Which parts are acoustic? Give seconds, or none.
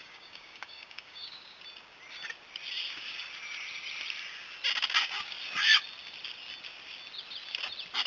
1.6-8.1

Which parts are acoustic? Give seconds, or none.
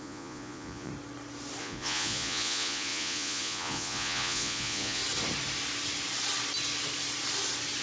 0.9-1.6; 5.0-7.8